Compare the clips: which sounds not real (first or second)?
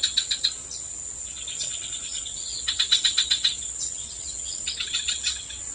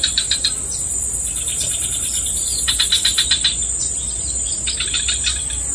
first